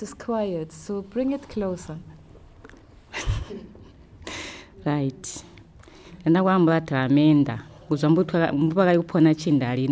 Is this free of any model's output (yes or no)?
yes